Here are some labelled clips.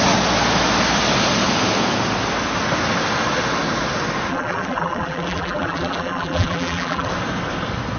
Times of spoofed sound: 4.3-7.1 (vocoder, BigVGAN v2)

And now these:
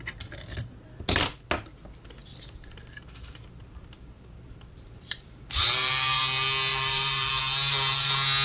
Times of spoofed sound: 2.2-6.2 (vocoder, BigVGAN v2); 6.7-7.3

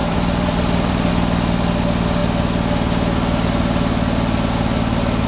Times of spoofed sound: 0.0-1.1 (vocoder, BigVGAN v2)